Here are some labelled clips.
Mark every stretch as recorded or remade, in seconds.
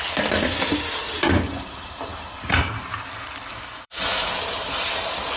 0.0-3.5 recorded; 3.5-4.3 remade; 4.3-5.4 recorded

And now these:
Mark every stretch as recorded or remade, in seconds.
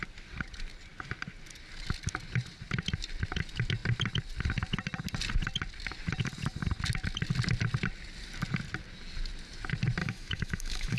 0.0-10.0 recorded; 10.0-11.0 remade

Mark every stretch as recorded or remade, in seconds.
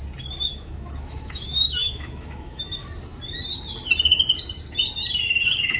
0.0-0.5 recorded; 0.5-2.7 remade; 2.7-5.8 recorded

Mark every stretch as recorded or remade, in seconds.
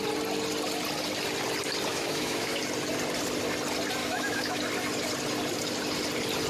0.0-1.9 recorded; 1.9-2.6 remade; 2.6-4.0 recorded; 4.0-4.6 remade; 4.6-6.5 recorded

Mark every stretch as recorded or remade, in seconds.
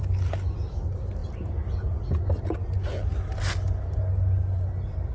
0.0-5.1 recorded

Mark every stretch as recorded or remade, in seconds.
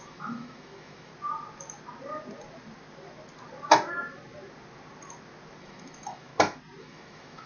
0.0-1.1 remade; 1.1-5.6 recorded; 5.6-6.3 remade; 6.3-6.8 recorded; 6.8-7.5 remade